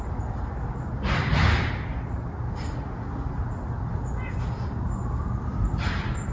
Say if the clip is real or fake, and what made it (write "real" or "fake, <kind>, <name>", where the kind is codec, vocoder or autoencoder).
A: real